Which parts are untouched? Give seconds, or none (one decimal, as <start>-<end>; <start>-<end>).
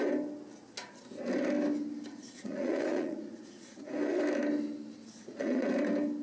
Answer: 0.0-2.1; 3.9-5.2; 5.7-6.2